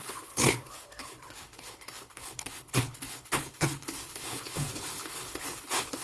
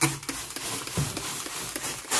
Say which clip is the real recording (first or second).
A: second